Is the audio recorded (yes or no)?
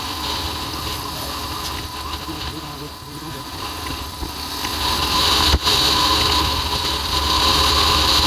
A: yes